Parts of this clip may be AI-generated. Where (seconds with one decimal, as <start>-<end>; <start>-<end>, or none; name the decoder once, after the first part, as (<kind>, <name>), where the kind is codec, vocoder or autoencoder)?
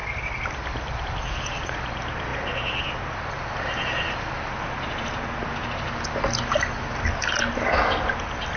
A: none